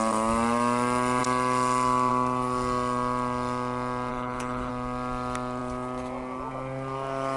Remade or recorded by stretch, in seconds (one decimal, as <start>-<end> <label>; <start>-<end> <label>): 0.0-4.1 recorded; 4.1-4.7 remade; 4.7-7.4 recorded